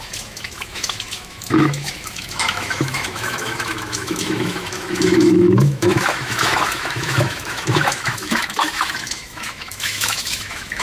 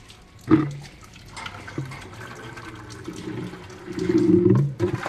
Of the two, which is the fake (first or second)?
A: first